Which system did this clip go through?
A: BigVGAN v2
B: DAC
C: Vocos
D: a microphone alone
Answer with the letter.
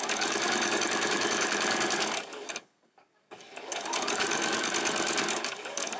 B